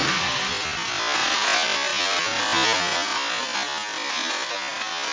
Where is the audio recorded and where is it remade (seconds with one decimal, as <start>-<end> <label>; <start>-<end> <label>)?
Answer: 0.0-0.5 remade; 0.5-5.1 recorded